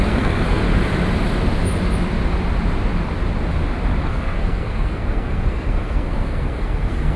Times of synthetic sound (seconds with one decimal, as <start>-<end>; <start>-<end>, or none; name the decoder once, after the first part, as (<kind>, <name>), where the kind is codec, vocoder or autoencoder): 0.0-0.6 (codec, SNAC); 4.0-7.2